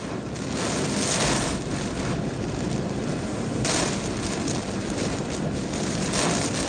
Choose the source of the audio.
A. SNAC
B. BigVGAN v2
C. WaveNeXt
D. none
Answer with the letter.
D